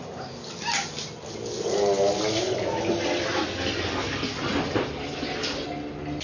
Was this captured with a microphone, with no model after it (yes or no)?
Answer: yes